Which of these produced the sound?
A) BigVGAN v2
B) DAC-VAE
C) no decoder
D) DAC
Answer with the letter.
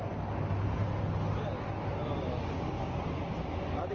C